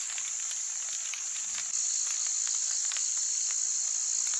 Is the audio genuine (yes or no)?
yes